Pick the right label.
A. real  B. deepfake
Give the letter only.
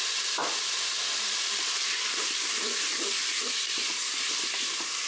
B